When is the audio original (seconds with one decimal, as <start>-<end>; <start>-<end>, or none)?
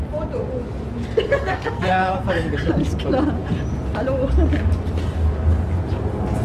0.0-1.3; 2.3-6.4